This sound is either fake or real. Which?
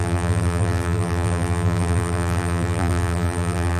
fake